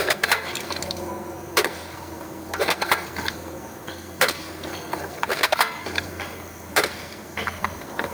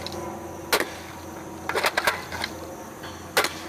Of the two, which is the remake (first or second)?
first